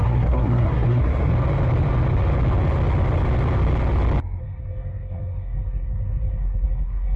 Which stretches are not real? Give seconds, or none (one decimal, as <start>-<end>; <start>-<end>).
0.0-1.3; 4.4-7.2

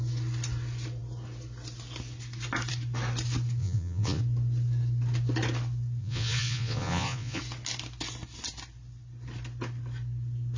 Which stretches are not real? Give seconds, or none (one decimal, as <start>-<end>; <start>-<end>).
3.6-4.2; 6.0-7.4

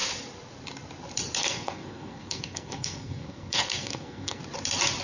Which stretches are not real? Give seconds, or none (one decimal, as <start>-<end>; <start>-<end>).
1.4-4.4